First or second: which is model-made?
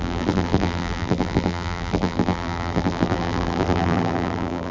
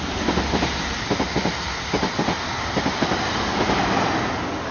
first